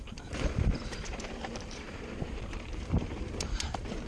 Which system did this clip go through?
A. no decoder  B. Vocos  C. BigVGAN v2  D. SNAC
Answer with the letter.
C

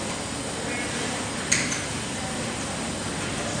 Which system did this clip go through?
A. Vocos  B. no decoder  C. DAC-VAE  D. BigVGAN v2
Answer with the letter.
B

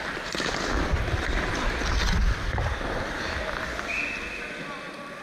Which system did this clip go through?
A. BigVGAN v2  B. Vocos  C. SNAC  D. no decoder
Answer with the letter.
D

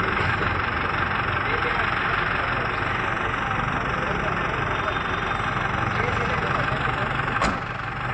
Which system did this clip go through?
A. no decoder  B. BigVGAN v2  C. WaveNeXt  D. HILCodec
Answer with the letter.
A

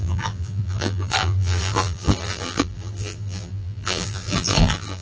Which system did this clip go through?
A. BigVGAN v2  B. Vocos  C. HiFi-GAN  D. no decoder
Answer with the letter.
A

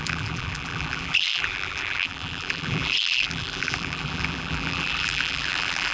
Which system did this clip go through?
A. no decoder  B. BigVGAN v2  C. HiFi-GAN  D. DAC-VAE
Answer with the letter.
B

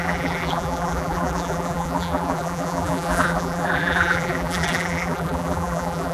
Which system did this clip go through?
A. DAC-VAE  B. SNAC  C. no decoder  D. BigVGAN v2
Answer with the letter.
D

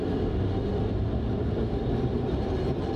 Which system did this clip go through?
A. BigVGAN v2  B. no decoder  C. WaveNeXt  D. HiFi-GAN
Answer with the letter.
B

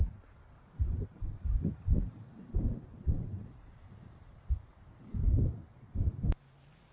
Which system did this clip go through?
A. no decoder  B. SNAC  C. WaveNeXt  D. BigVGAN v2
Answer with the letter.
A